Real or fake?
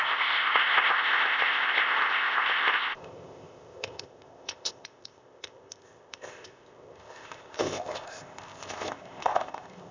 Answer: fake